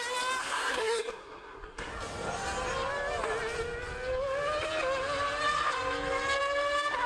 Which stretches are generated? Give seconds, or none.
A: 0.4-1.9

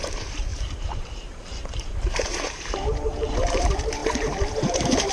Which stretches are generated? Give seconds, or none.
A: 0.0-5.1

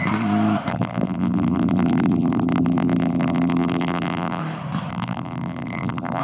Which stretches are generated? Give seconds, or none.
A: 0.7-4.4; 4.9-6.2

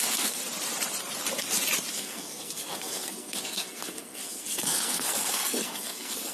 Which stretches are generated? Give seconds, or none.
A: 0.0-0.4; 1.9-6.3

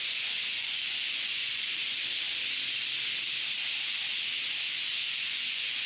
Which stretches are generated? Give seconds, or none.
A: 0.0-2.0; 4.9-5.9

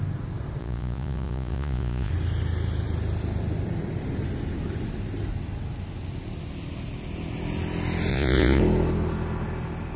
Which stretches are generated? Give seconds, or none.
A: 0.6-2.1; 8.1-8.6

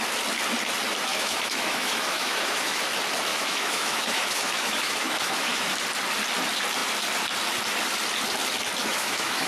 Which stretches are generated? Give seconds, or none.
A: 1.1-2.8; 3.3-5.8; 8.8-9.5

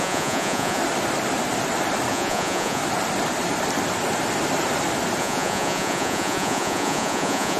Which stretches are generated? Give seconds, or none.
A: 0.0-0.8; 2.1-2.8; 5.2-7.6